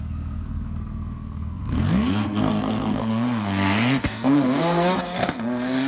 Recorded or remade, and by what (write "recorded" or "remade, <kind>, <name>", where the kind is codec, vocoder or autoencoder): remade, codec, SNAC